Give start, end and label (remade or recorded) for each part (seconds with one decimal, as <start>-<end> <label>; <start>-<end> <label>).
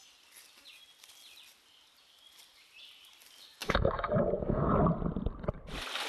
0.0-3.6 recorded; 3.6-4.8 remade; 4.8-6.1 recorded